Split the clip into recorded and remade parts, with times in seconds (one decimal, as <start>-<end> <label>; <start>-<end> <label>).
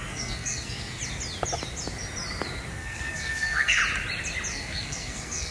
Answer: 0.0-1.0 remade; 1.0-2.7 recorded; 2.7-3.8 remade; 3.8-4.5 recorded; 4.5-5.5 remade